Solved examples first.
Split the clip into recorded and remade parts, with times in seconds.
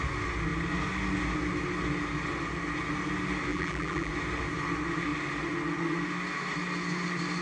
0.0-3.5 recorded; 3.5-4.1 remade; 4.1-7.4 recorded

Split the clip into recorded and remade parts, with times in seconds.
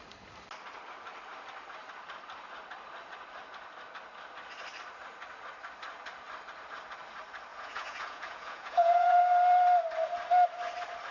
0.0-7.5 recorded; 7.5-9.2 remade; 9.2-11.1 recorded